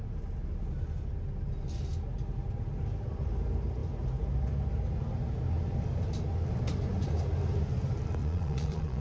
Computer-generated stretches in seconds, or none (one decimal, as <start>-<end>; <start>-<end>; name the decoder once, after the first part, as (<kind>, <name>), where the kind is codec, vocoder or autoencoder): 8.2-9.0 (vocoder, Vocos)